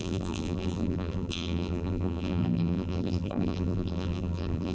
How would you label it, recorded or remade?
remade